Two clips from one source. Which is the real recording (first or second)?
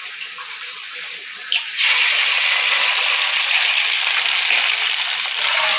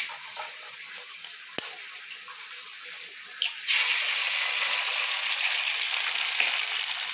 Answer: second